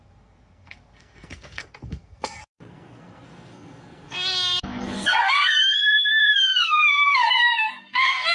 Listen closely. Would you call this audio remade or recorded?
remade